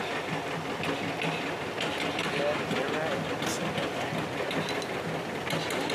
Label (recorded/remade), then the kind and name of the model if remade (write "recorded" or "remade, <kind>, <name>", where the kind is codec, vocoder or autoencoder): recorded